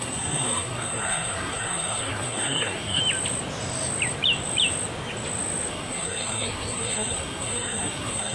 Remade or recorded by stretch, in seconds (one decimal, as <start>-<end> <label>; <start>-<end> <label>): 0.0-3.0 remade; 3.0-5.7 recorded; 5.7-8.3 remade